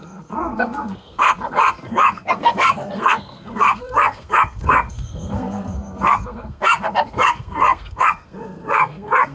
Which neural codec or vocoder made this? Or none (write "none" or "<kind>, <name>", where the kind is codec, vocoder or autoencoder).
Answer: codec, SNAC